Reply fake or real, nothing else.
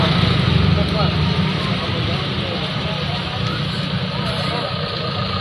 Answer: real